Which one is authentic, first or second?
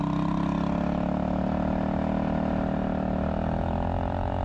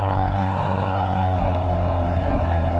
first